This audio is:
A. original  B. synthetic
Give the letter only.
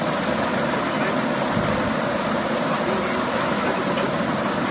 A